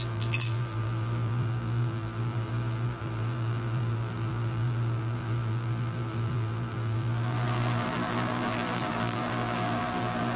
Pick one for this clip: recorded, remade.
remade